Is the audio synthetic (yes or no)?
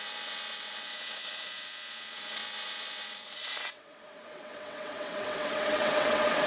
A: yes